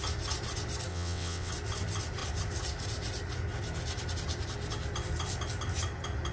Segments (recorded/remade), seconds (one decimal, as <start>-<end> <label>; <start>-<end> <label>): 0.0-0.9 recorded; 0.9-1.5 remade; 1.5-6.3 recorded